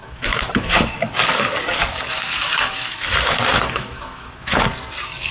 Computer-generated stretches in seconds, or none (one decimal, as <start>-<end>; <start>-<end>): 0.0-1.1; 1.8-4.6